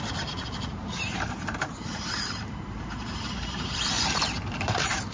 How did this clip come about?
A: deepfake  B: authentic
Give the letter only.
A